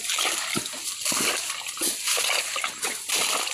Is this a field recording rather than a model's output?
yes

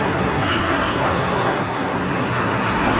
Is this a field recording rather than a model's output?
no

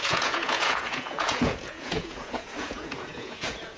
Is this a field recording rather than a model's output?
no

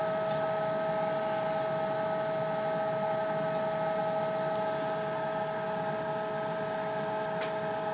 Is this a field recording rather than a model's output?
yes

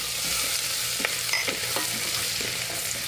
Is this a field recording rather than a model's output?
yes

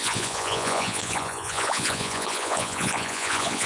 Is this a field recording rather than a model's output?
no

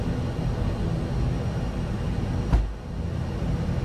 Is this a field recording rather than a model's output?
yes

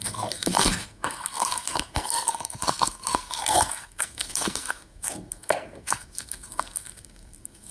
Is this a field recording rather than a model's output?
no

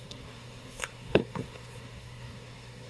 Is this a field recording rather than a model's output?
no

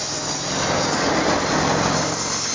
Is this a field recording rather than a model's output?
yes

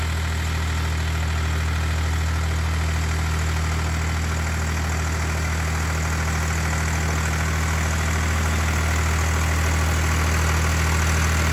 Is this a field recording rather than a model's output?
yes